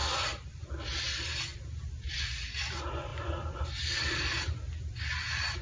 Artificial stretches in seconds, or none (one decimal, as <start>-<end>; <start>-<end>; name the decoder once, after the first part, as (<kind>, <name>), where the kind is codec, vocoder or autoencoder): 0.0-0.7 (vocoder, BigVGAN v2); 3.1-5.0